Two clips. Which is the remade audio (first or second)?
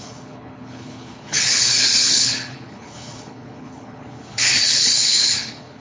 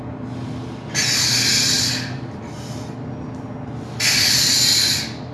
first